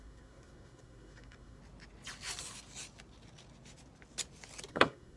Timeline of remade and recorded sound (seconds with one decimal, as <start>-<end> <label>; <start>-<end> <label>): 0.0-1.6 remade; 1.6-4.7 recorded; 4.7-5.2 remade